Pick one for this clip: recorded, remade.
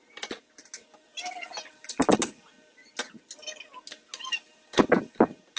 recorded